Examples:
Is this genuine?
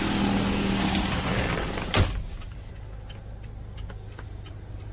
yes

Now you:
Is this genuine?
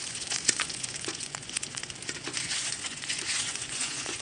no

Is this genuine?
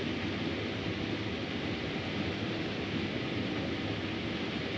yes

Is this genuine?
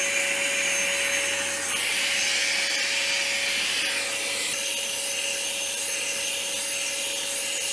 yes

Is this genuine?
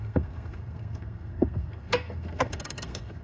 no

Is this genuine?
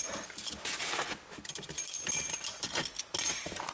yes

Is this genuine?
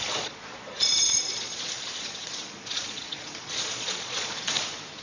no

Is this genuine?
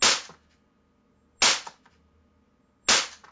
yes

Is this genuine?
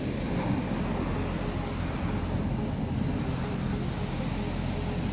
yes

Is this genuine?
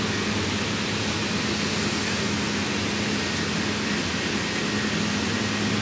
yes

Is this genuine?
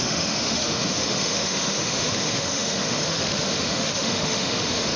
no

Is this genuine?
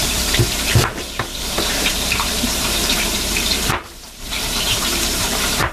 no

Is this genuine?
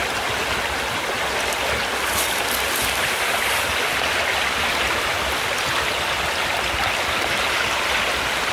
yes